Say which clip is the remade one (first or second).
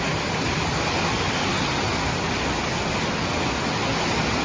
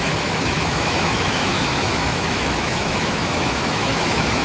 second